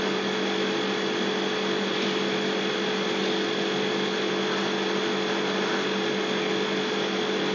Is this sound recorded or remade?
recorded